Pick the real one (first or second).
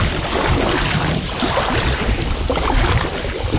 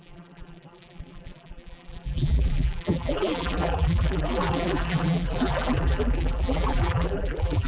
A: first